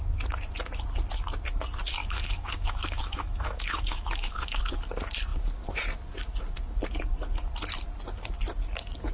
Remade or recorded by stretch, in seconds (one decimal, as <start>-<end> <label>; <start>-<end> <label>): 0.0-2.0 recorded; 2.0-4.6 remade; 4.6-9.1 recorded